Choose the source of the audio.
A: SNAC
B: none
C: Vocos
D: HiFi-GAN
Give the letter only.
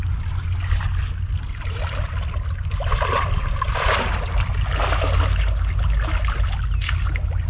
B